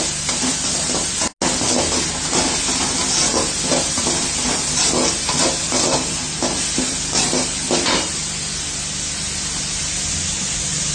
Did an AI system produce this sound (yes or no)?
no